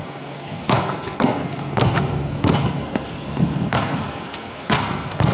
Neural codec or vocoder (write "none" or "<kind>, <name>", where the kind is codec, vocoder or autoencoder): codec, SNAC